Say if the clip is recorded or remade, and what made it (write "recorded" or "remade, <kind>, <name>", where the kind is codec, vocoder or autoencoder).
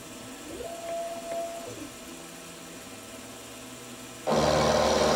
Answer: recorded